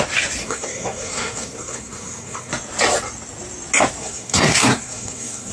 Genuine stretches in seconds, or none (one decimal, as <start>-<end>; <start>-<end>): 0.0-0.4; 2.5-4.0